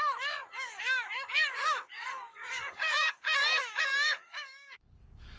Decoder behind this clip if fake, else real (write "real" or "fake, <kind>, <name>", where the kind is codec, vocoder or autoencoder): fake, codec, DAC